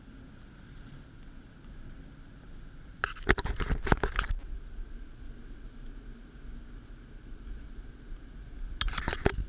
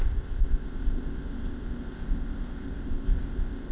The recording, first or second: first